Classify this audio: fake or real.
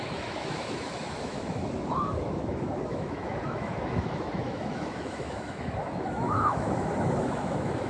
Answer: fake